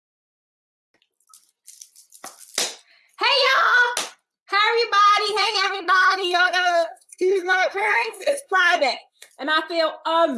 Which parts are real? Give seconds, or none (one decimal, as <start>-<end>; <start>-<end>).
0.0-5.4; 9.3-10.4